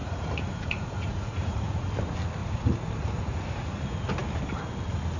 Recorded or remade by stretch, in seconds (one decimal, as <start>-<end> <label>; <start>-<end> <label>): 0.0-1.9 remade; 1.9-2.4 recorded; 2.4-3.8 remade; 3.8-5.2 recorded